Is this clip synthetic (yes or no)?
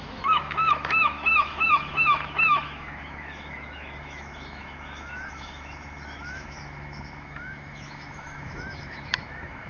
yes